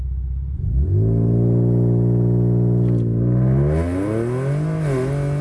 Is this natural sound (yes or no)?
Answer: yes